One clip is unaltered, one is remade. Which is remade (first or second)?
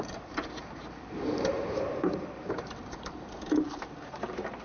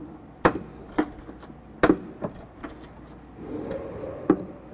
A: first